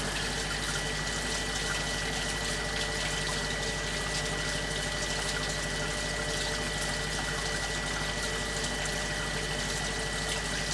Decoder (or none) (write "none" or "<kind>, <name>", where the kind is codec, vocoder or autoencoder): none